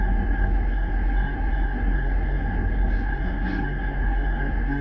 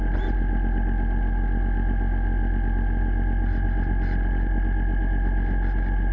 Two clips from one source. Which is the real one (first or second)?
second